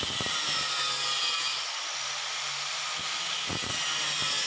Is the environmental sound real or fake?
real